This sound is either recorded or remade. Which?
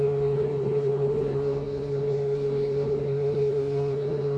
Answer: remade